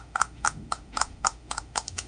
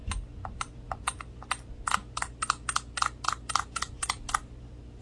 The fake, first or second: first